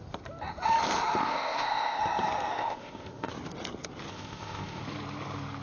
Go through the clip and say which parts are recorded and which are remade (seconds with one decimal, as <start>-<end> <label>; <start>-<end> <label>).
0.0-1.2 recorded; 1.2-2.0 remade; 2.0-2.5 recorded; 2.5-3.3 remade; 3.3-4.1 recorded; 4.1-4.8 remade; 4.8-5.6 recorded